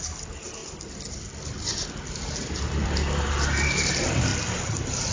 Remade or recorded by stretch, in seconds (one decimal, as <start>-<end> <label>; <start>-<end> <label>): 0.0-5.1 recorded